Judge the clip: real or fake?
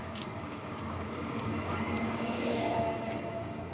fake